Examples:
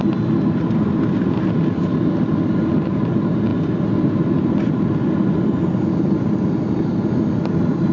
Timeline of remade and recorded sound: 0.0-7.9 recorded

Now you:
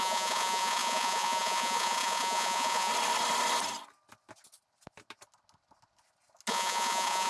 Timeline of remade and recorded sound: 0.0-2.9 remade; 2.9-6.5 recorded; 6.5-7.3 remade

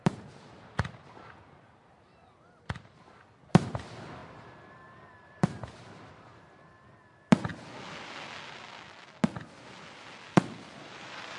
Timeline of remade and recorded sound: 0.0-7.5 remade; 7.5-10.3 recorded; 10.3-11.4 remade